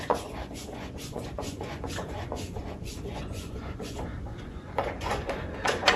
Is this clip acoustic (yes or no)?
no